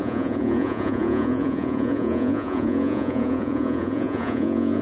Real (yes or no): no